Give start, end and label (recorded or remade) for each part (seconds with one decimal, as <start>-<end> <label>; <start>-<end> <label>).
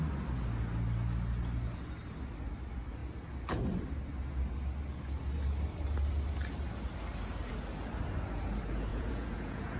0.0-8.9 recorded; 8.9-9.8 remade